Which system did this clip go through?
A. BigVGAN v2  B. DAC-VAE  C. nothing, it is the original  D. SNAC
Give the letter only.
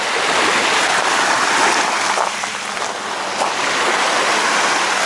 C